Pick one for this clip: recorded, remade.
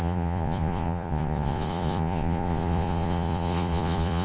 remade